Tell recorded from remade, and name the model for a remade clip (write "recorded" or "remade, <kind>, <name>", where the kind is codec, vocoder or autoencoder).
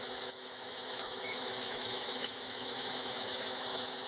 remade, autoencoder, DAC-VAE